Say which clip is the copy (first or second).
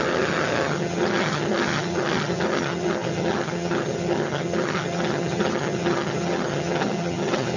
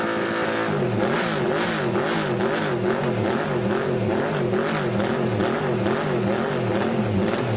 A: first